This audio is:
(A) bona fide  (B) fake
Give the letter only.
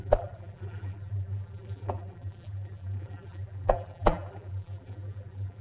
B